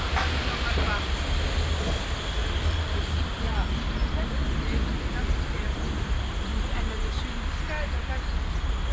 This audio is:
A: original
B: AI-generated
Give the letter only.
A